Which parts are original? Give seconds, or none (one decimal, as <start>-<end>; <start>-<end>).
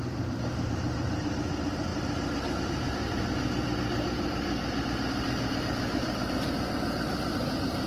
3.0-5.6